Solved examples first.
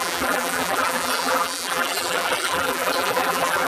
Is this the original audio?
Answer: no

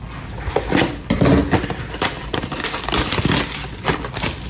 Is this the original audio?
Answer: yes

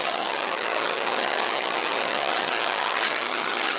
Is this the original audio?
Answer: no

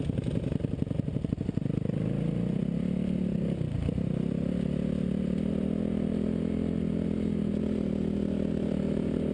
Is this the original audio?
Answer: yes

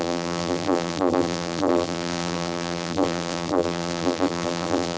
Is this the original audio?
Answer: no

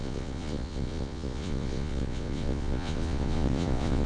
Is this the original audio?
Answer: no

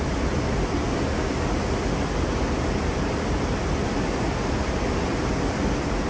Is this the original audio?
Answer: yes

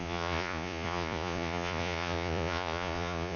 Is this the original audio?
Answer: no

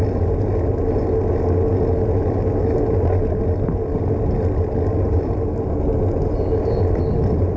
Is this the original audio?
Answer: yes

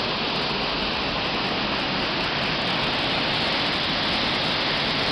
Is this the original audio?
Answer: yes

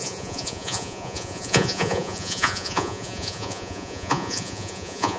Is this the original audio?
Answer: no